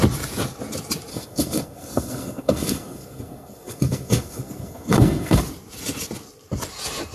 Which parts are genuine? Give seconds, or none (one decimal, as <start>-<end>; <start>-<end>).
0.0-1.1; 5.4-7.1